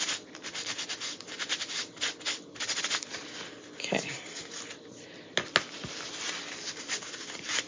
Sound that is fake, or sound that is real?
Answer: real